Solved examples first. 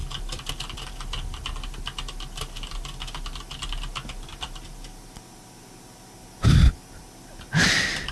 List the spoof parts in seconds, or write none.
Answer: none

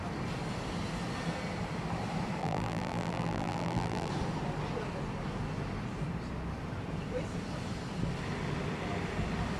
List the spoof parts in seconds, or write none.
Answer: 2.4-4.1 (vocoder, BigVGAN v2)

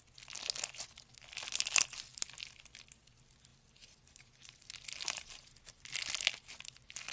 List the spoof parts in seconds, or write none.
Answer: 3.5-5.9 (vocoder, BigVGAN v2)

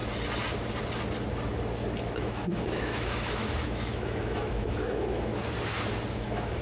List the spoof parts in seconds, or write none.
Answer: 2.0-5.3 (autoencoder, DAC-VAE); 6.1-6.6

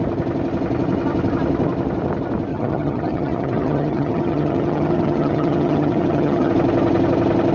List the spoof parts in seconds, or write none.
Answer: 2.5-6.5 (vocoder, HiFi-GAN)

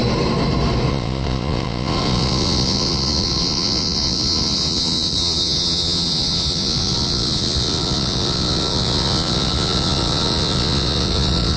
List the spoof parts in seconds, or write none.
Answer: 0.9-11.6 (vocoder, Vocos)

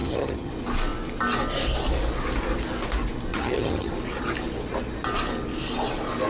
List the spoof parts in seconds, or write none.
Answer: 0.0-0.5 (vocoder, HiFi-GAN); 3.3-3.9

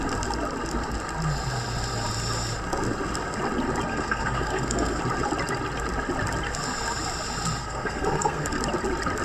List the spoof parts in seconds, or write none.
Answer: 3.9-5.0 (codec, SNAC); 7.6-8.6